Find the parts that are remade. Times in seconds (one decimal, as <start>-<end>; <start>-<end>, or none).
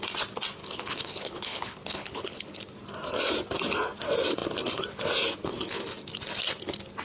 0.6-2.6